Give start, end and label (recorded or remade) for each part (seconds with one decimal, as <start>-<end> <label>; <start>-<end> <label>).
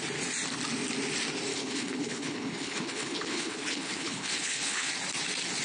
0.0-1.5 recorded; 1.5-4.9 remade; 4.9-5.6 recorded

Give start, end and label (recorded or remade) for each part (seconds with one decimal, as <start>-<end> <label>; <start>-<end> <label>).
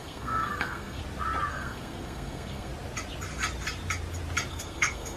0.0-1.0 remade; 1.0-1.5 recorded; 1.5-2.7 remade; 2.7-4.5 recorded; 4.5-5.2 remade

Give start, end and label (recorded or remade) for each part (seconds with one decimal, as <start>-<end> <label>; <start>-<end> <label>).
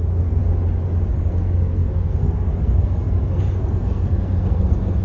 0.0-0.4 remade; 0.4-1.1 recorded; 1.1-5.0 remade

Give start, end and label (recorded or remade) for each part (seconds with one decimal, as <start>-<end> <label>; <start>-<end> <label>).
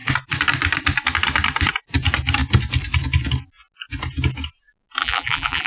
0.0-5.0 recorded; 5.0-5.7 remade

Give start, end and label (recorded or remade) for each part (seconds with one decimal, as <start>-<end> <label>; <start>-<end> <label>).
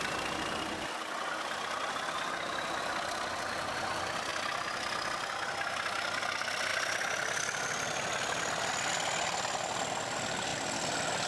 0.0-11.3 recorded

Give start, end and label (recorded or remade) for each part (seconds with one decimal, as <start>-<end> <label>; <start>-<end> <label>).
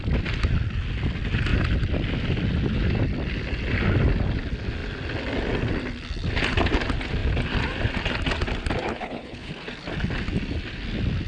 0.0-8.9 recorded; 8.9-9.5 remade; 9.5-11.3 recorded